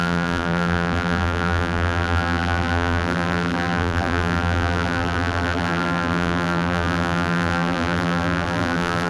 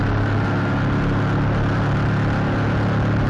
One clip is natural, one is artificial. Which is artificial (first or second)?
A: first